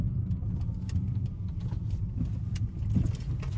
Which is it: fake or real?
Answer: real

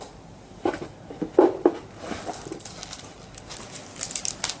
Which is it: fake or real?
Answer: real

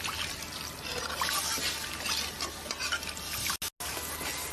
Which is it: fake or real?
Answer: real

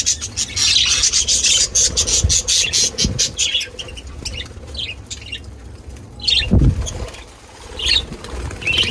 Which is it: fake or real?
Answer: real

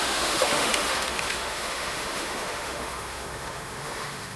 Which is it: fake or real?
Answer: fake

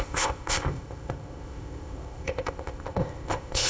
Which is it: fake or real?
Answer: fake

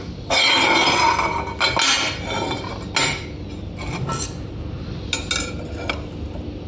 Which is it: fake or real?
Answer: real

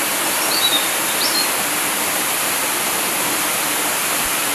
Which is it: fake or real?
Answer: fake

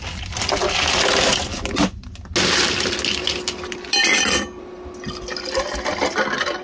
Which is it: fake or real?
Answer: real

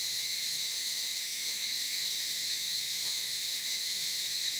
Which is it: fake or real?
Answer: fake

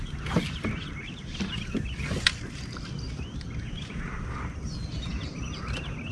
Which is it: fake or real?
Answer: real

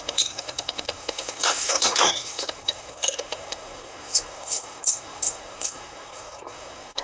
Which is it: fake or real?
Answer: fake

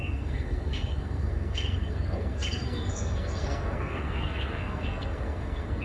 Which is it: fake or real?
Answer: fake